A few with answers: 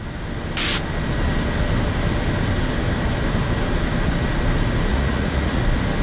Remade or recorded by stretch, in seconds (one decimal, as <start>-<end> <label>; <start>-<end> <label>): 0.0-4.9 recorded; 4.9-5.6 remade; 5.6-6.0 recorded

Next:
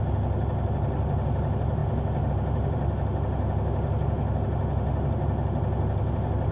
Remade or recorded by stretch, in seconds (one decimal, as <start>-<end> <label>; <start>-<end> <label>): 0.0-6.5 recorded

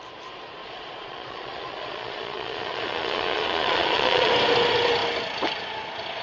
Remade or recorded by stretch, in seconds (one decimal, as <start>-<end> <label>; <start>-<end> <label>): 0.0-0.6 recorded; 0.6-4.3 remade; 4.3-6.2 recorded

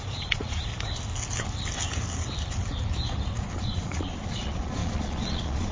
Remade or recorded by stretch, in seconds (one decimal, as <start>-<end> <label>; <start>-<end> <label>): 0.0-0.7 remade; 0.7-3.6 recorded; 3.6-5.7 remade

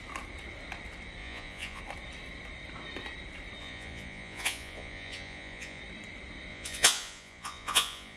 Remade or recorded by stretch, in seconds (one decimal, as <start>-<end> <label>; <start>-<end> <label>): 0.0-1.2 recorded; 1.2-1.8 remade; 1.8-3.6 recorded; 3.6-5.8 remade; 5.8-6.5 recorded; 6.5-8.2 remade

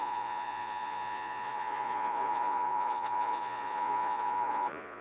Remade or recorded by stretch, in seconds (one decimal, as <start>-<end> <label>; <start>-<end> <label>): 0.0-5.0 remade